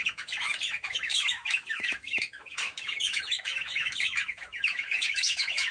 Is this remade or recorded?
remade